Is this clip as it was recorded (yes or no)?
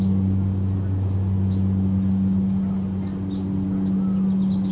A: yes